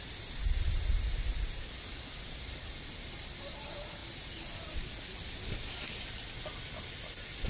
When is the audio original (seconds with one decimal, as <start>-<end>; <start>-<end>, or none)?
0.0-7.5